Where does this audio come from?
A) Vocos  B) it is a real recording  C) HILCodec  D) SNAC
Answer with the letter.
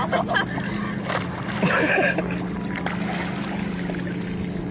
B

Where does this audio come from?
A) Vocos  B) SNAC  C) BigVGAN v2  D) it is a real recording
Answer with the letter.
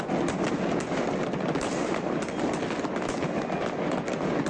D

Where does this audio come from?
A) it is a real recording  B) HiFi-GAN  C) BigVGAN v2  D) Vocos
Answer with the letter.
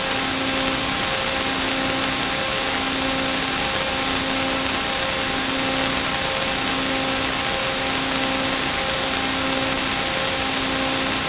A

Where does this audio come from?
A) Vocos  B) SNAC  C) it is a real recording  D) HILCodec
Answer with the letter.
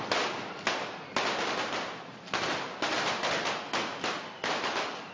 C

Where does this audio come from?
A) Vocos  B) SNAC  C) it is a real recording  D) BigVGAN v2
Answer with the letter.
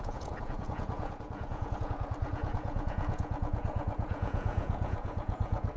A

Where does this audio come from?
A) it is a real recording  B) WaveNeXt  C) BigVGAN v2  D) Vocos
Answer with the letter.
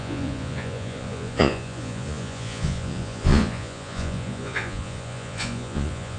D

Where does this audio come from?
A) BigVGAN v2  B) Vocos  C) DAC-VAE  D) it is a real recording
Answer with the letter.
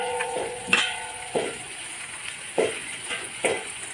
B